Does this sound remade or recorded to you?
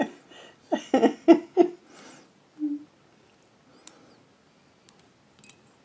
recorded